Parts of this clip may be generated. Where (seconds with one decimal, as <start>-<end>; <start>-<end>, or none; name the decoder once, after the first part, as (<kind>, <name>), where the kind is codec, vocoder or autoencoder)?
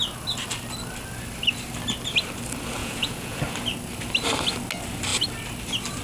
2.8-3.4 (vocoder, Vocos)